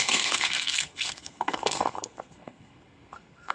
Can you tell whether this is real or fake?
fake